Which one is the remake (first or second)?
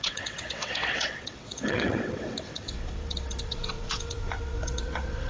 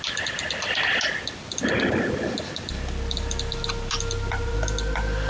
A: first